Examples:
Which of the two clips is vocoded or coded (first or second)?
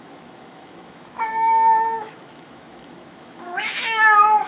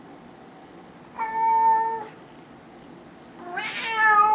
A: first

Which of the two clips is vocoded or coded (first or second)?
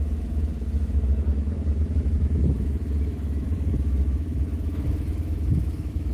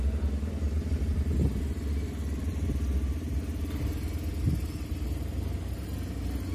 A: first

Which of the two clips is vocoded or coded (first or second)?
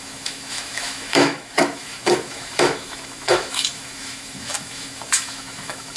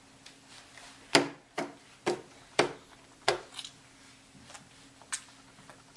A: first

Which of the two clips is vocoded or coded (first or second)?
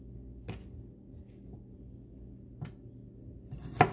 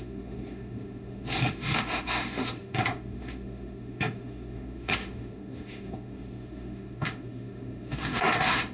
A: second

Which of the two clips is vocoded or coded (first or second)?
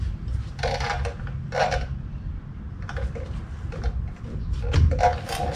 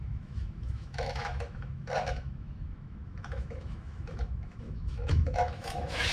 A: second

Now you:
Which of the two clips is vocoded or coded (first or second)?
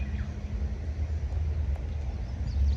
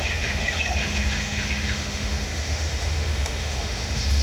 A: second